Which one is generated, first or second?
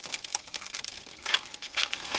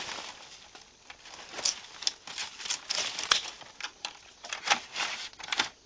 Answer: first